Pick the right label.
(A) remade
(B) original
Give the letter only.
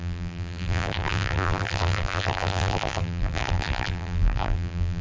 A